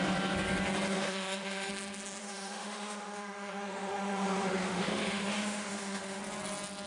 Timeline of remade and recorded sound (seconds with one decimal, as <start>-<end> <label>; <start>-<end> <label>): 0.0-0.9 recorded; 0.9-1.7 remade; 1.7-2.2 recorded; 2.2-6.2 remade; 6.2-6.9 recorded